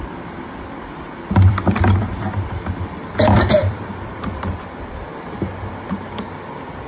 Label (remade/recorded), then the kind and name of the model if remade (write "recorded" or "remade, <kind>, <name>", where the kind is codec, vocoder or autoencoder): remade, vocoder, BigVGAN v2